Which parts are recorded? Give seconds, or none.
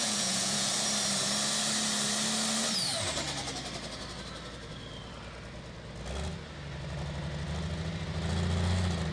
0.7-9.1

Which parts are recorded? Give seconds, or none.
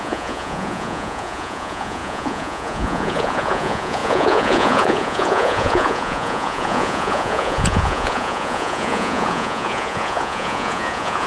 none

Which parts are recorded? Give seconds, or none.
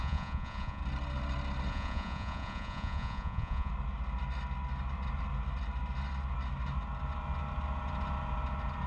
0.8-1.7; 3.7-8.9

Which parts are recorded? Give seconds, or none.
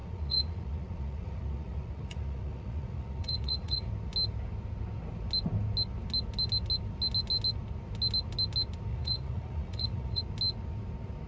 3.9-8.9; 10.2-11.3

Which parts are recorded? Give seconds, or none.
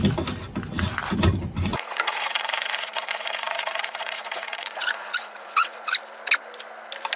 0.0-1.7; 6.0-7.2